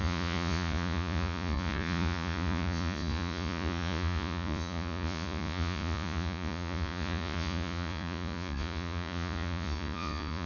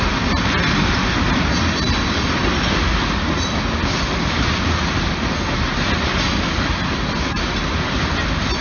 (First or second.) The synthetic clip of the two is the first